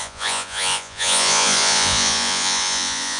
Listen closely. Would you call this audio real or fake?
fake